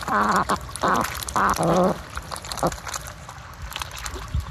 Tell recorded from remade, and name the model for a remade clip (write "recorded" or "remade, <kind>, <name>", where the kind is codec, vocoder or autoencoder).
recorded